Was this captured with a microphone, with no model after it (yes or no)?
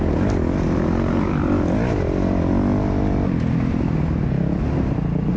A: yes